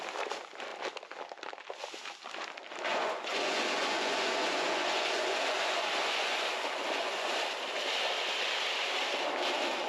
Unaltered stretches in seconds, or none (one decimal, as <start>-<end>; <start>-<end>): 0.0-2.9; 7.4-9.9